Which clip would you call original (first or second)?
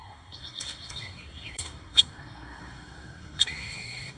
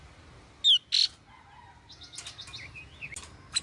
second